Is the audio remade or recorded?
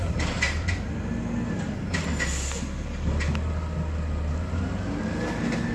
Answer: recorded